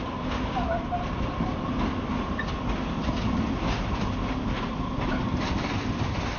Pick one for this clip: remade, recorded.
recorded